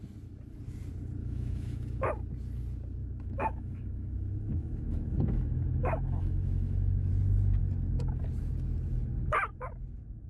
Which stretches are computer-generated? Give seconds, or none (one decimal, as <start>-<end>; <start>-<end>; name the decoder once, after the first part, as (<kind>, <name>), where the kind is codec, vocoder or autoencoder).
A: 1.2-2.0 (autoencoder, DAC-VAE); 3.0-7.1